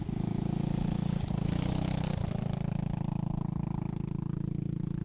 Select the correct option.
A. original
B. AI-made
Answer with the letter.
A